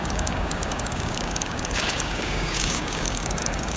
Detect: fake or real fake